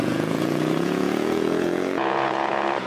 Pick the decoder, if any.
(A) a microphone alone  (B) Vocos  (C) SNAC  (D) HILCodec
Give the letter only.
B